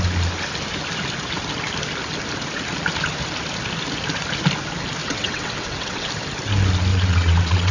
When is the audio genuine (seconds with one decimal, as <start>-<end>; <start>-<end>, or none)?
0.0-5.0; 6.1-6.9